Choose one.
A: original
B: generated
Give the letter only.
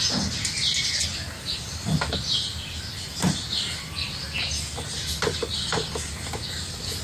A